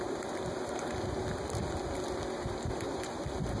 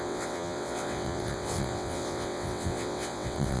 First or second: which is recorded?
first